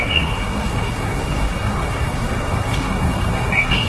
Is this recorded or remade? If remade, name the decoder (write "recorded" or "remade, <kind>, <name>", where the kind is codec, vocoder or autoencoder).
remade, codec, SNAC